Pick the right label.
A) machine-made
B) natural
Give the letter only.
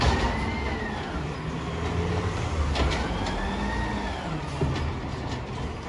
B